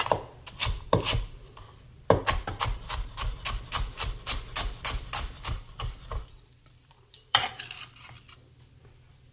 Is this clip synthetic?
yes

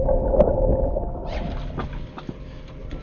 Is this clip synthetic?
yes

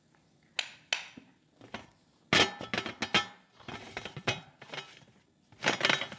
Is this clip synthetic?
no